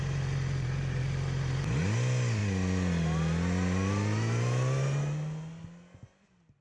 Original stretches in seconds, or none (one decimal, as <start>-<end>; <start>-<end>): 0.0-6.6

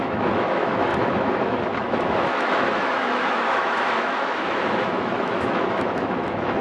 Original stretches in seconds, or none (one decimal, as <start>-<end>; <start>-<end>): none

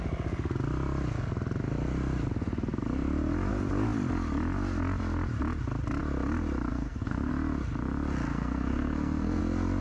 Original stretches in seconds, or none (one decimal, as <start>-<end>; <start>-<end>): 0.0-6.7; 7.3-8.3; 9.4-9.8

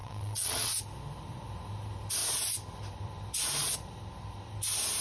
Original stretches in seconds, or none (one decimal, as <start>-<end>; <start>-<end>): 0.7-5.0